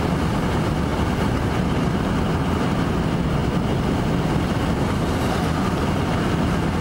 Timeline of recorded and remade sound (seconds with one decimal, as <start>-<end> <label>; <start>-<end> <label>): 0.0-6.8 recorded